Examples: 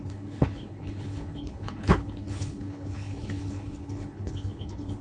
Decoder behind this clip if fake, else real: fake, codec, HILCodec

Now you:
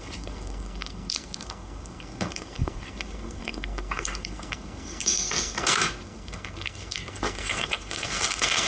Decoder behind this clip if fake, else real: fake, codec, SNAC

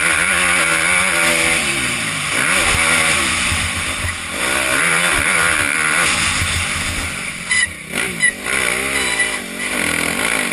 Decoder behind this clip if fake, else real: real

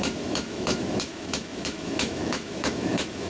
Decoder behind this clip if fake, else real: fake, autoencoder, DAC-VAE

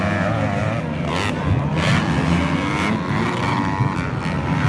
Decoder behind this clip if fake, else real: real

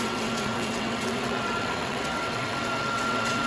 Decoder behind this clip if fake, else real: fake, vocoder, WaveNeXt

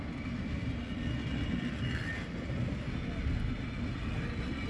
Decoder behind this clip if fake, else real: real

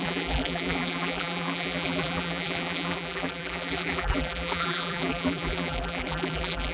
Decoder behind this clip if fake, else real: fake, vocoder, BigVGAN v2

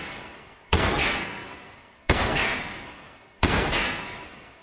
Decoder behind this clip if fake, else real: fake, codec, SNAC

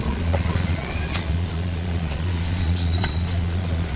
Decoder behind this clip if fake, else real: fake, vocoder, Vocos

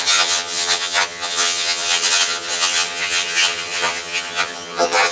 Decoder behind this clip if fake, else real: fake, vocoder, HiFi-GAN